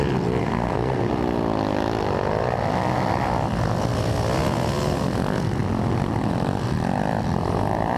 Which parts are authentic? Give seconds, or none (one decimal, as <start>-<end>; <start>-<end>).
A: 0.0-0.4; 1.1-8.0